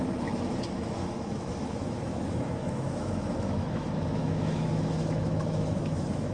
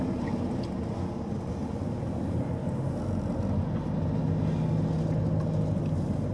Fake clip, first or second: first